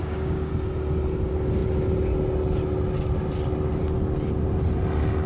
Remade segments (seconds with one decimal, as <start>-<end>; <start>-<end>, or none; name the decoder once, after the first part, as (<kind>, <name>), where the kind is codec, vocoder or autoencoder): 0.0-0.5 (codec, DAC)